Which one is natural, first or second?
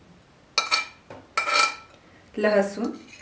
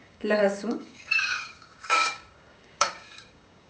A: first